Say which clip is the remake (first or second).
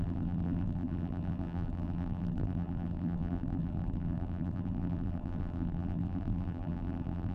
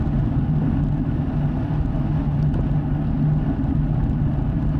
first